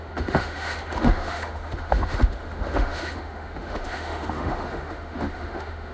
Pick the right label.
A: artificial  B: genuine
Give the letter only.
A